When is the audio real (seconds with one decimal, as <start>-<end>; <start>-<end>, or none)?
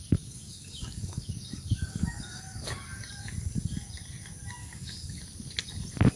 3.1-4.6; 5.2-6.2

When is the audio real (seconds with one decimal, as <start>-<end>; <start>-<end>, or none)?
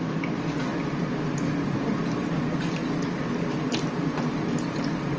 0.0-5.2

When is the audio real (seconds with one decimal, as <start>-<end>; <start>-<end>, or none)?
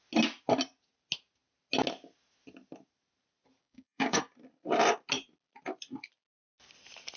0.0-3.6; 4.2-7.2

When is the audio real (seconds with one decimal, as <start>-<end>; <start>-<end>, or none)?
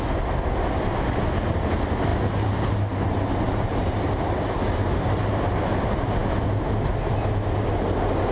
0.0-8.3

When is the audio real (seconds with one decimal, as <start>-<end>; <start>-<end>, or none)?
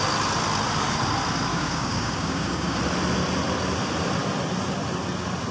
0.0-1.5; 2.8-5.5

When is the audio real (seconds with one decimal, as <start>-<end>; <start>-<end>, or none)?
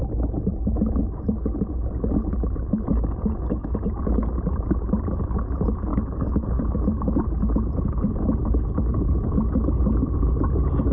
0.0-2.9; 3.8-5.9; 6.6-10.9